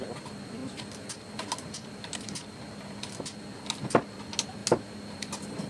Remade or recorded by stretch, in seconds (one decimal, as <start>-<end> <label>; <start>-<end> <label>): 0.0-5.7 recorded